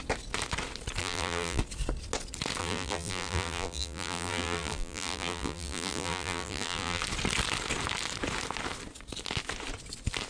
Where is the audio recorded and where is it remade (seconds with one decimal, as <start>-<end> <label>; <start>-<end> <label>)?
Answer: 0.0-1.0 recorded; 1.0-1.6 remade; 1.6-2.6 recorded; 2.6-7.0 remade; 7.0-10.3 recorded